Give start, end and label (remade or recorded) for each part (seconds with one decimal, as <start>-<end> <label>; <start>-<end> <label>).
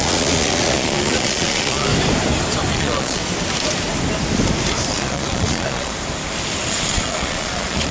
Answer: 0.0-1.9 remade; 1.9-2.7 recorded; 2.7-3.2 remade; 3.2-4.9 recorded; 4.9-5.9 remade; 5.9-6.7 recorded; 6.7-7.9 remade